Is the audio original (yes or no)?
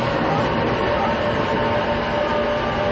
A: yes